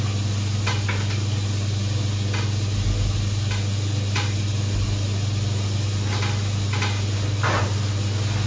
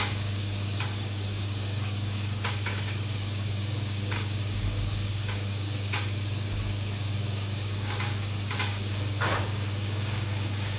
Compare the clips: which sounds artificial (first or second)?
second